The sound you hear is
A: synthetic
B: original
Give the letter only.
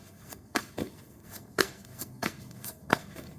A